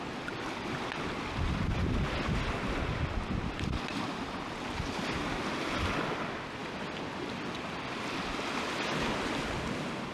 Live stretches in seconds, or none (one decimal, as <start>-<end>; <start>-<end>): 0.0-10.1